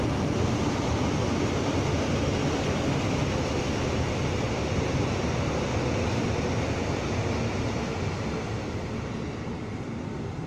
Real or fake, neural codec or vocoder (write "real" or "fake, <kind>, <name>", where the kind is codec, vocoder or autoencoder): real